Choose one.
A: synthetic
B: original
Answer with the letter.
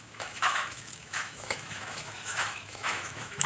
A